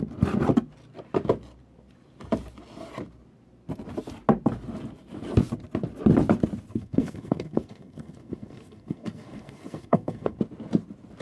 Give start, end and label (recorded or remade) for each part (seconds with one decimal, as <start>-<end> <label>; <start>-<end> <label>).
0.0-6.7 recorded; 6.7-10.4 remade; 10.4-11.2 recorded